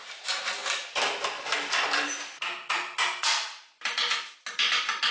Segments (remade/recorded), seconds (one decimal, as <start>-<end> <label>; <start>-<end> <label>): 0.0-5.1 recorded